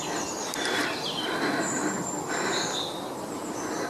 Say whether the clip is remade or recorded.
recorded